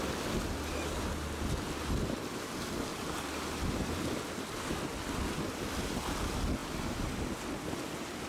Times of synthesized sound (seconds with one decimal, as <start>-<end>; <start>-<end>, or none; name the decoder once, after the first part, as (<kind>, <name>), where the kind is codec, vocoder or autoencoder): 2.9-4.6 (vocoder, BigVGAN v2)